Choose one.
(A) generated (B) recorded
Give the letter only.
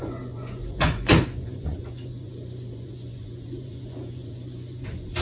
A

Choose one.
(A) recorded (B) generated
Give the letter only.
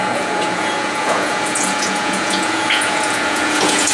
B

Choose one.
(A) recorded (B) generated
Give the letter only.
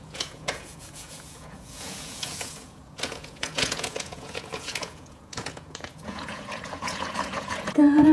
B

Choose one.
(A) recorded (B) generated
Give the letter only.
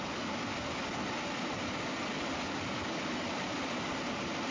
A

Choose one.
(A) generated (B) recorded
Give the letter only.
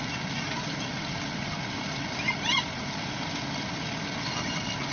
B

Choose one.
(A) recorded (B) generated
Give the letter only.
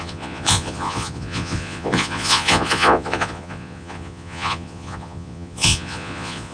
B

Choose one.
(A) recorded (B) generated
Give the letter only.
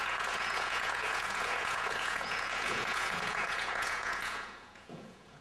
B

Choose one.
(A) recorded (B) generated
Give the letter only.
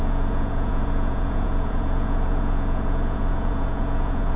B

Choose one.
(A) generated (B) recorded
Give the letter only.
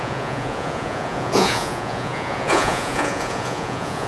A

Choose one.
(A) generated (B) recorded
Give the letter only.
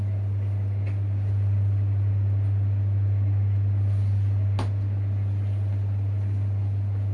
B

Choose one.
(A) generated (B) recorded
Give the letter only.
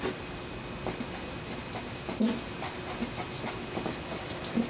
B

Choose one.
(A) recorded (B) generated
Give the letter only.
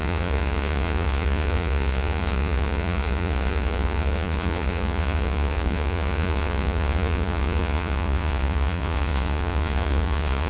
B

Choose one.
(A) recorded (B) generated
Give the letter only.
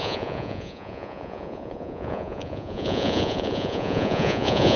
B